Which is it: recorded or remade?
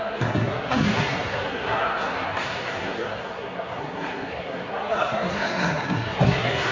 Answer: remade